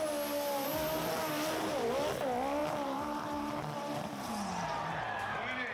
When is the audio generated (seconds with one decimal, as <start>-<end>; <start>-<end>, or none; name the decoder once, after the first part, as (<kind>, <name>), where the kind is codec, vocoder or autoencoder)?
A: 2.6-5.0 (vocoder, BigVGAN v2)